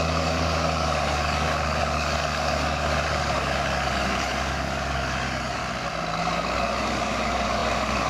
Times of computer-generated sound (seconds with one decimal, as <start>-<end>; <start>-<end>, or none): 0.0-5.6; 6.2-8.1